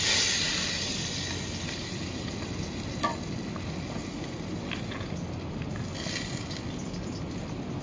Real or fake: real